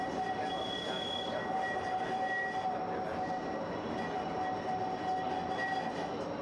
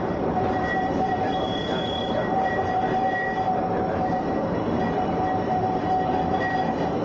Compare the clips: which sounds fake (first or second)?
second